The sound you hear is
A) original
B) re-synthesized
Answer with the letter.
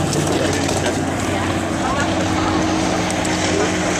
A